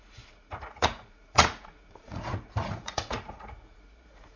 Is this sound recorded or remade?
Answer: remade